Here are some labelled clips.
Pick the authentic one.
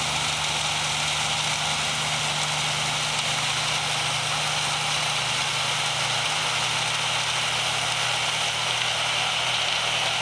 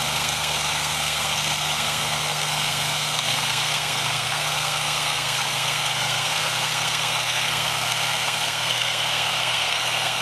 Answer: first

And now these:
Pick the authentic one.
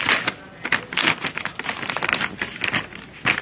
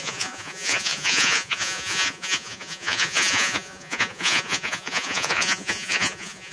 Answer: first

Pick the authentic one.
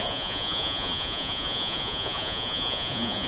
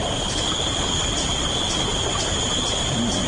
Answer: second